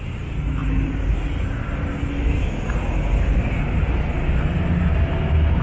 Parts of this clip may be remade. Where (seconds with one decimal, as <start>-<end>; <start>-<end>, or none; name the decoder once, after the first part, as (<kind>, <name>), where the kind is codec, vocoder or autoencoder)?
none